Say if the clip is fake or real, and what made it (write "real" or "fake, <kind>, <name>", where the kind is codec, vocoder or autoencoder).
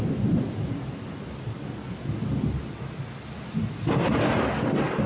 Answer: real